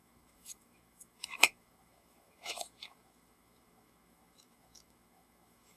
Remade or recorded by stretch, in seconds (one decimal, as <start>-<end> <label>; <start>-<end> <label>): 0.0-5.8 remade

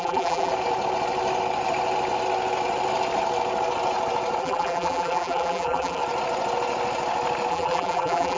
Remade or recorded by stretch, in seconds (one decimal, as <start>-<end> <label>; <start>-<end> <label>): 0.0-0.5 remade; 0.5-4.4 recorded; 4.4-6.0 remade; 6.0-7.5 recorded; 7.5-8.4 remade